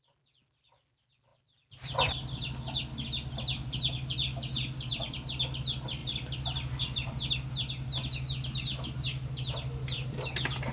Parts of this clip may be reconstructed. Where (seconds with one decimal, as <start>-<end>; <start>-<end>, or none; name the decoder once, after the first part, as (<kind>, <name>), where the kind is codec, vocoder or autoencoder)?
none